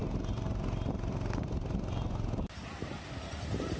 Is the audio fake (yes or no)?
no